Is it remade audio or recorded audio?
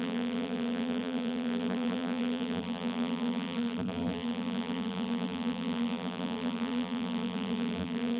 remade